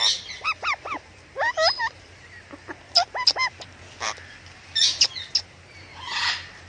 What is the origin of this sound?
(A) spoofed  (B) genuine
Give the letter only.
B